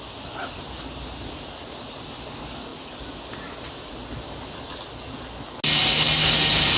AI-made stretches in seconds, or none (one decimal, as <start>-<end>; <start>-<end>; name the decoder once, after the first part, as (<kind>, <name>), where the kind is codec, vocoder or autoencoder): none